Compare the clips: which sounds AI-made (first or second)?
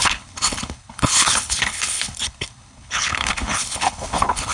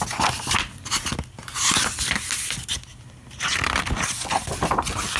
first